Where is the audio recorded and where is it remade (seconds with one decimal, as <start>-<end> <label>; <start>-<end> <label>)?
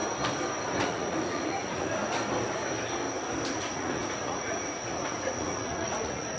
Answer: 0.0-0.8 recorded; 0.8-2.0 remade; 2.0-3.5 recorded; 3.5-6.4 remade